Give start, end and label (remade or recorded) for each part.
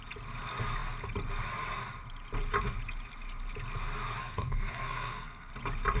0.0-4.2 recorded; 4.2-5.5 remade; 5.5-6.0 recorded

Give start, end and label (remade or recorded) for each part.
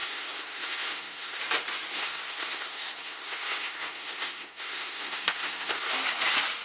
0.0-1.4 remade; 1.4-1.9 recorded; 1.9-5.9 remade; 5.9-6.6 recorded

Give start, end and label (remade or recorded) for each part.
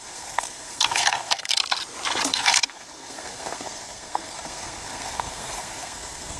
0.0-1.6 remade; 1.6-2.3 recorded; 2.3-6.4 remade